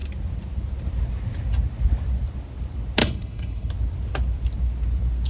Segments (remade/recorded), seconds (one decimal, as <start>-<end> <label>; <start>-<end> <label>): 0.0-3.0 recorded; 3.0-3.7 remade; 3.7-5.3 recorded